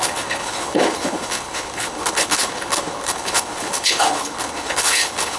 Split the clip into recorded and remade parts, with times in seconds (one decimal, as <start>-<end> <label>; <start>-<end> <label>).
0.0-5.4 remade